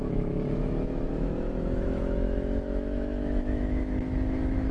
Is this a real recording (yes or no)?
no